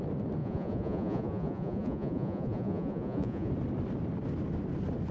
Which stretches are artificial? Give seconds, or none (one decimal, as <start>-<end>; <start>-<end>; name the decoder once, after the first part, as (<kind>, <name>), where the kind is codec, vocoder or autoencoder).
0.4-3.5 (vocoder, Vocos)